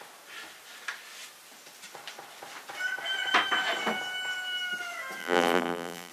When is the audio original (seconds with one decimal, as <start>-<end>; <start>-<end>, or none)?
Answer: 0.0-5.2